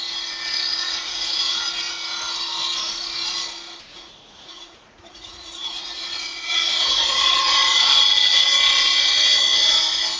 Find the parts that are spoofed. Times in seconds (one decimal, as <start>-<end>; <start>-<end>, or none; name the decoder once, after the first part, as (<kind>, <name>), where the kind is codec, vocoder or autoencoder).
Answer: 0.7-1.6 (vocoder, Vocos); 3.9-8.0